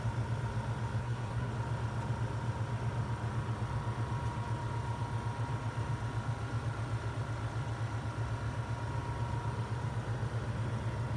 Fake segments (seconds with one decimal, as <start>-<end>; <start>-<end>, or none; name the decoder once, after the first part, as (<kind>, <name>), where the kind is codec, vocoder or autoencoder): 1.0-1.5 (codec, SNAC)